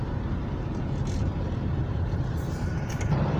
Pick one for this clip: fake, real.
fake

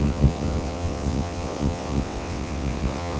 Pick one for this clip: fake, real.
fake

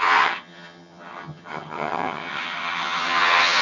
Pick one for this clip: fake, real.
fake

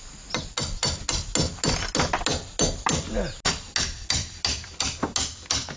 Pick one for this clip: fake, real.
real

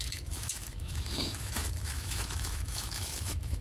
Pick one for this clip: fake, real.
fake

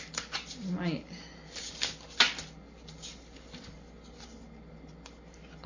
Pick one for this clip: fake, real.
real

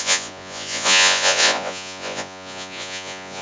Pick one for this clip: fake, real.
fake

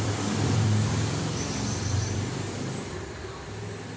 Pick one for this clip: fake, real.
fake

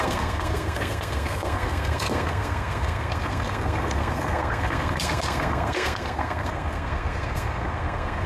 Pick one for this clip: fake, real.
fake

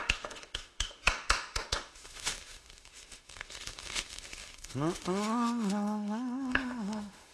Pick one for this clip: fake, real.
fake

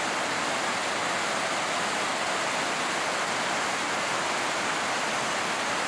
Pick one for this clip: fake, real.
real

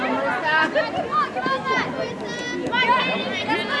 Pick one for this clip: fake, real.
real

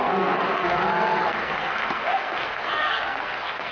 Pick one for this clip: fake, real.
fake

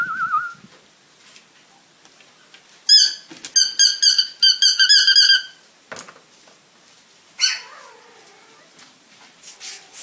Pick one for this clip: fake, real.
real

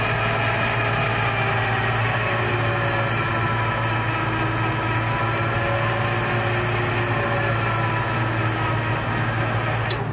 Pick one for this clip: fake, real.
real